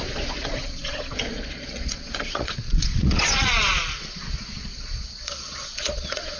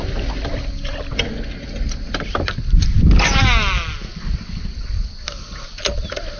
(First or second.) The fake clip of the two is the first